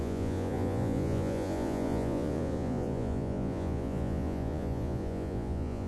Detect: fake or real fake